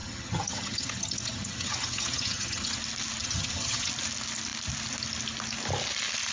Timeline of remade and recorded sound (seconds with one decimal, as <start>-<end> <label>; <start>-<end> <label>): 0.0-2.8 remade; 2.8-3.2 recorded; 3.2-3.9 remade; 3.9-6.3 recorded